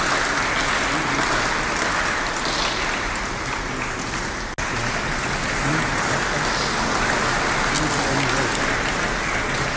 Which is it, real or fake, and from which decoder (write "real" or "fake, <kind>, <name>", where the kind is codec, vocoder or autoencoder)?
real